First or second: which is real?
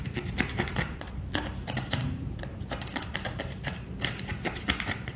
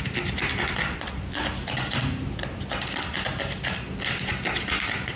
second